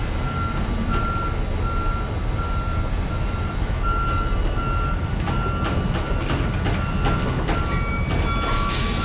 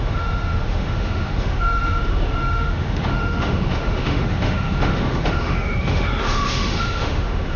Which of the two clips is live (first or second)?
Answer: first